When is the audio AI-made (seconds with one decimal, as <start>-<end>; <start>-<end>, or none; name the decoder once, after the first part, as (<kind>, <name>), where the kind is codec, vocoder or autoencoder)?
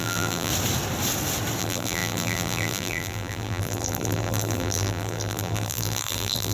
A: 0.0-0.5 (vocoder, BigVGAN v2); 1.6-6.5